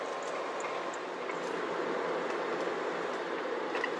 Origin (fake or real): real